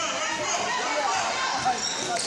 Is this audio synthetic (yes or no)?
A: no